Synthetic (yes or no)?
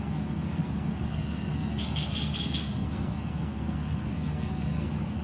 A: yes